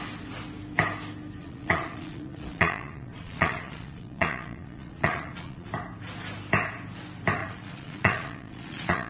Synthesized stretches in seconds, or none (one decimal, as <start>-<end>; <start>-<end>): 1.4-5.7; 7.4-9.1